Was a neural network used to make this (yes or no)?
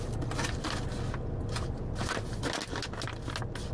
no